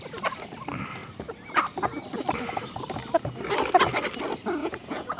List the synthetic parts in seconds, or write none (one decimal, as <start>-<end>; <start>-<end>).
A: 4.6-5.2